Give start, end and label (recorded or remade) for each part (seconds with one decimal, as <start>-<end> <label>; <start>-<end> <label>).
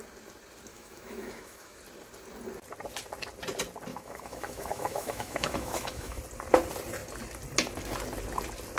0.0-0.7 recorded; 0.7-1.8 remade; 1.8-3.9 recorded; 3.9-6.2 remade; 6.2-8.8 recorded